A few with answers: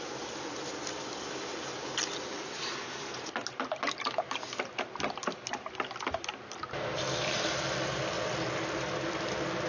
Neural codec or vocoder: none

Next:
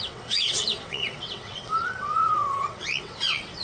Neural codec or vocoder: vocoder, WaveNeXt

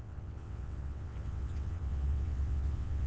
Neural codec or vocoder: vocoder, WaveNeXt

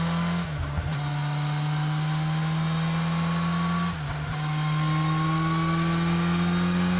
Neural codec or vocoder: none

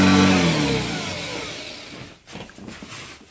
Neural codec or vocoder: none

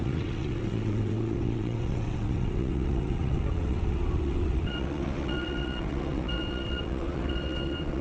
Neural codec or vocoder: vocoder, WaveNeXt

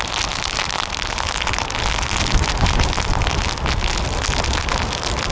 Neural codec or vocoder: none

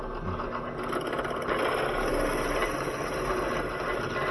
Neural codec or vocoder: none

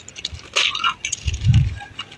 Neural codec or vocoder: none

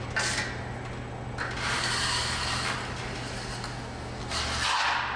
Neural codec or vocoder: none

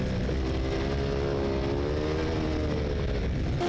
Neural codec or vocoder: none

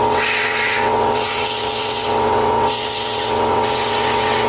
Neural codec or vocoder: vocoder, WaveNeXt